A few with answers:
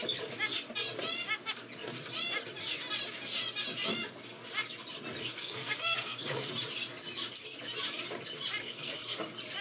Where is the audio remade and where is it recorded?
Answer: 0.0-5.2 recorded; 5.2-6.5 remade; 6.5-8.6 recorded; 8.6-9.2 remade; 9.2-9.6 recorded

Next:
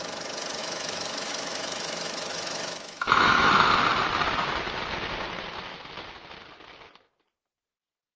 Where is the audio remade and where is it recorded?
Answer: 0.0-0.6 recorded; 0.6-3.5 remade; 3.5-8.2 recorded

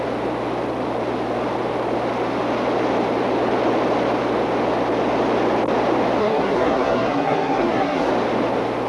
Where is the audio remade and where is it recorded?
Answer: 0.0-6.2 recorded; 6.2-8.1 remade; 8.1-8.9 recorded

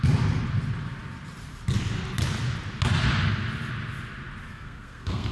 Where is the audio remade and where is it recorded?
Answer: 0.0-4.5 recorded; 4.5-5.3 remade

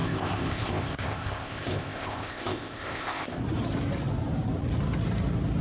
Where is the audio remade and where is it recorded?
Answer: 0.0-3.4 remade; 3.4-5.6 recorded

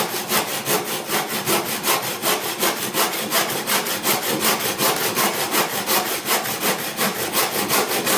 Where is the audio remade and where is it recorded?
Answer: 0.0-8.2 recorded

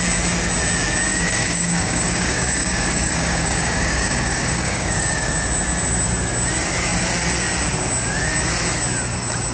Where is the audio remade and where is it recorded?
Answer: 0.0-1.1 recorded; 1.1-5.3 remade; 5.3-9.5 recorded